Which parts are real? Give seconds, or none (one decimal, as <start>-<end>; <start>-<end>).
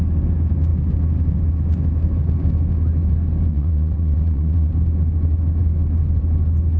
0.0-3.5; 4.7-6.8